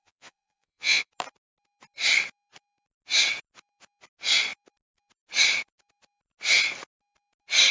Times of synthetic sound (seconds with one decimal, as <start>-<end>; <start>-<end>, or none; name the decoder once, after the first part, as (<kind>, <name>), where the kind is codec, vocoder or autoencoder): 0.0-1.1 (vocoder, Vocos)